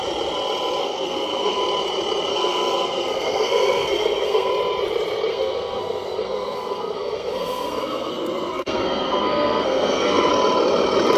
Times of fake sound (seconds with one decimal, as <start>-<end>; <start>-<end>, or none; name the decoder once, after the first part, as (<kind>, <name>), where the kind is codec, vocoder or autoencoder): 0.8-1.6 (codec, SNAC); 2.3-4.5; 5.3-10.3